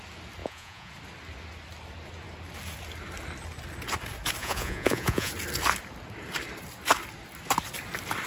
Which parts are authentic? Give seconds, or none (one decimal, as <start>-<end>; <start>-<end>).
0.0-0.4; 0.9-4.4; 5.3-8.3